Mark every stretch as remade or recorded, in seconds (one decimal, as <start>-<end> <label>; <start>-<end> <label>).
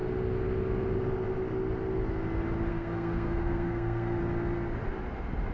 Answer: 0.0-2.7 recorded; 2.7-4.2 remade; 4.2-5.5 recorded